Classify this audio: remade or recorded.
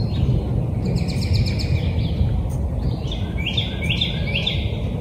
recorded